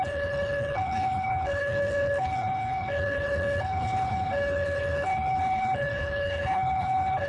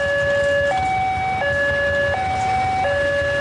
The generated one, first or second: first